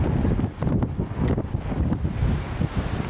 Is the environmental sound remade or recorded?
recorded